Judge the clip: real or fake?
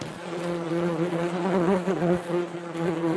fake